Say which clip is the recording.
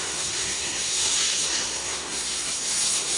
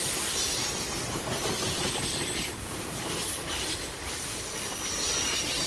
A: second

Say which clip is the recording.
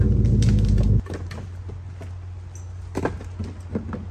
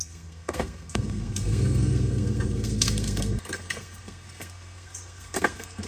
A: first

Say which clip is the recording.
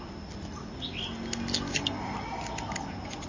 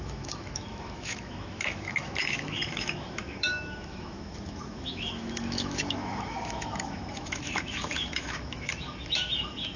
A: first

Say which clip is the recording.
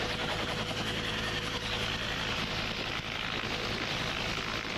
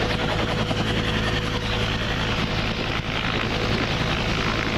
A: second